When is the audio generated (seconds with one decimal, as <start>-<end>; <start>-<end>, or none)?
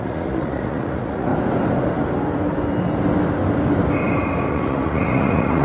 0.0-1.3; 4.5-5.6